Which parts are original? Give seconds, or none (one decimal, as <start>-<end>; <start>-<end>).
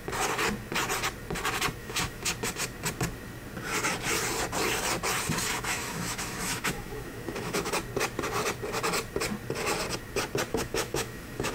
0.0-1.8; 2.3-5.5; 7.7-10.5